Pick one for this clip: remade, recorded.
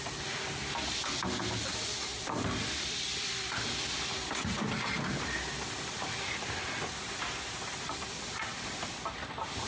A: recorded